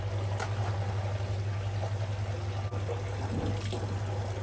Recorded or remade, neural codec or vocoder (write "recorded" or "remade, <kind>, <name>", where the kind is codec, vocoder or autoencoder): recorded